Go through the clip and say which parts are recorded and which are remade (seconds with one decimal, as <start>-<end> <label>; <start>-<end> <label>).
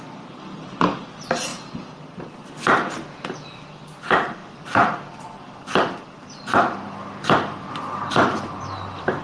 0.0-9.2 recorded